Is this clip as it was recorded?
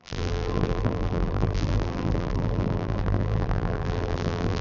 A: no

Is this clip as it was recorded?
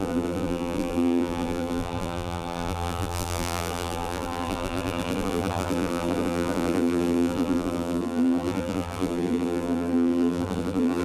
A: no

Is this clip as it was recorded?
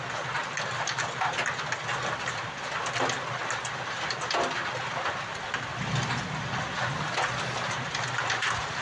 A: yes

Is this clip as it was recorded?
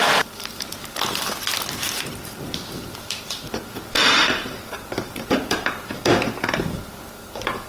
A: no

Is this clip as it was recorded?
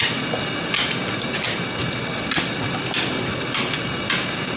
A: no